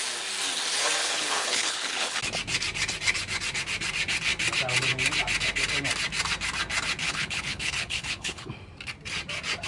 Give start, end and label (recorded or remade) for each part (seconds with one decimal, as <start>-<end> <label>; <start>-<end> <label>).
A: 0.0-1.0 recorded; 1.0-2.2 remade; 2.2-7.0 recorded; 7.0-8.5 remade; 8.5-9.7 recorded